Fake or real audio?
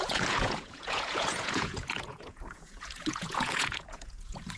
fake